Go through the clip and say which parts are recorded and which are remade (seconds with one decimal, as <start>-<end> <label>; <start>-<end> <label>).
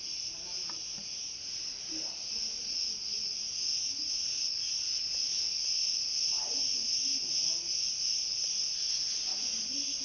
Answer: 0.0-5.8 recorded; 5.8-6.4 remade; 6.4-9.3 recorded; 9.3-10.0 remade